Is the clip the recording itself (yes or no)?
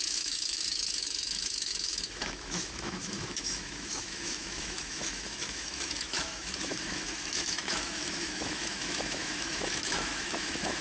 no